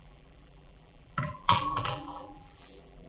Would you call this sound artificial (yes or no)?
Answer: yes